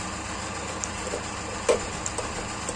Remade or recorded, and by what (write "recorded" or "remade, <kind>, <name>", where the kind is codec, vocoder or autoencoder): remade, vocoder, BigVGAN v2